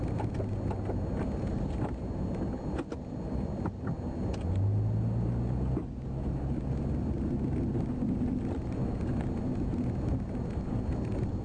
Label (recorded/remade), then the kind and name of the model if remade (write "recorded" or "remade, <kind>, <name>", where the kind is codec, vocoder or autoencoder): recorded